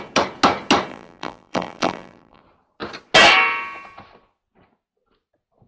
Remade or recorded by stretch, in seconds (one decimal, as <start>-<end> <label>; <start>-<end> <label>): 0.0-0.9 recorded; 0.9-2.4 remade; 2.4-5.7 recorded